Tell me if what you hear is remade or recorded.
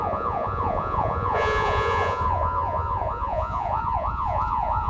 remade